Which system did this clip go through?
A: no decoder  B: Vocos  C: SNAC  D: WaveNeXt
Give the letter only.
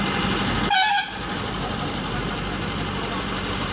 A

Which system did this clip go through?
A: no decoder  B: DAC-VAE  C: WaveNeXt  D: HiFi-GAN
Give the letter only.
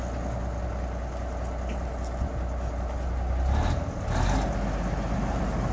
A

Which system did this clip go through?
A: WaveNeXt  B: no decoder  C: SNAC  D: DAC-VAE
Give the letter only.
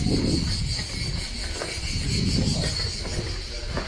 B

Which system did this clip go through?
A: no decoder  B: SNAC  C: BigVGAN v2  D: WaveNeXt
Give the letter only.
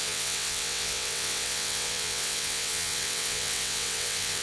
D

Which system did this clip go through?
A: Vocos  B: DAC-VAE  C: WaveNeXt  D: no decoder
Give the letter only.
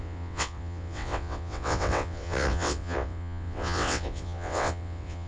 C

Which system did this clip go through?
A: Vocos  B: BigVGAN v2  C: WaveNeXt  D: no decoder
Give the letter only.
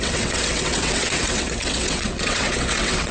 C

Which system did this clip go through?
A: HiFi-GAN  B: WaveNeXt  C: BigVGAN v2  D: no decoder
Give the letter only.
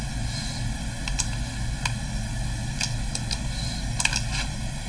D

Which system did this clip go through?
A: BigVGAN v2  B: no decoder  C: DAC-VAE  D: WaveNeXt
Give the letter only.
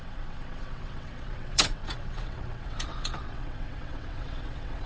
D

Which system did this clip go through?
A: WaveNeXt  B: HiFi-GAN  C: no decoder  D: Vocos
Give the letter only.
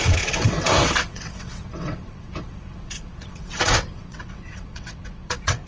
A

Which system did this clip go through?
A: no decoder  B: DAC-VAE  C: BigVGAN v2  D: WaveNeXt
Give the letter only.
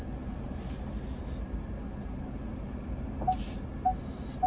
A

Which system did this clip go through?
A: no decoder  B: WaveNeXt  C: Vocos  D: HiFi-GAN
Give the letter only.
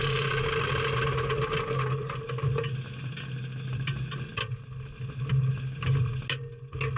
A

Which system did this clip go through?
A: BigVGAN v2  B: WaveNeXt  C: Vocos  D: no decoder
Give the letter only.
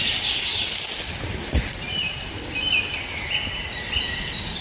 D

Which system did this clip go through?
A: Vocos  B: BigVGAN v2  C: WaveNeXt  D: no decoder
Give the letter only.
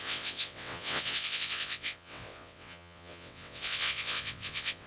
C